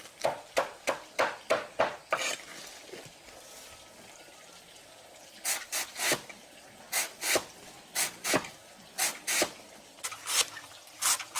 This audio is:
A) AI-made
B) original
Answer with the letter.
B